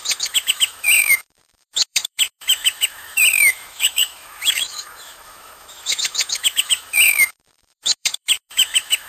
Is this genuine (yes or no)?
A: no